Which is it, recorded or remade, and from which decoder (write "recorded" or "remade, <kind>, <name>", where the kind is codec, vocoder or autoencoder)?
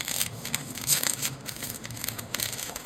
remade, autoencoder, DAC-VAE